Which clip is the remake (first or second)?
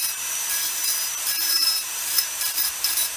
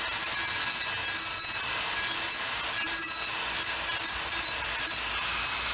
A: first